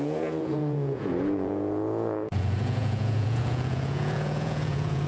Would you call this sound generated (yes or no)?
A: yes